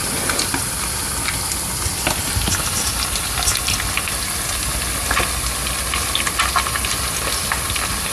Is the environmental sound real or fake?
real